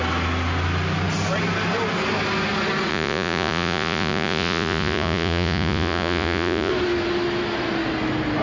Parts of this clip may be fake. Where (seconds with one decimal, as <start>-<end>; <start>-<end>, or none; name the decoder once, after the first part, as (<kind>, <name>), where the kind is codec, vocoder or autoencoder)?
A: 2.9-6.7 (vocoder, Vocos)